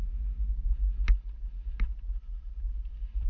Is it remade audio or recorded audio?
recorded